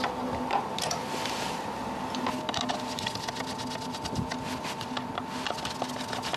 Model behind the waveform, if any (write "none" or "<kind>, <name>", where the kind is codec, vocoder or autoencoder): none